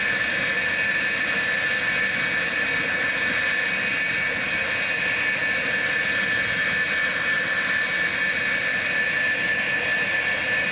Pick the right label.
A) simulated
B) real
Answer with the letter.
B